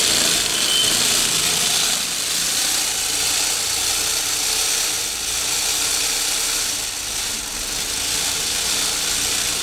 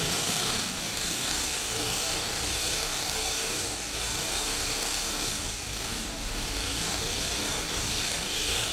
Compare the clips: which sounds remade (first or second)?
second